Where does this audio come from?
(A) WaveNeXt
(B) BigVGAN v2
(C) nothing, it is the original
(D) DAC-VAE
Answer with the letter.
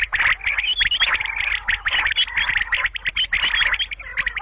C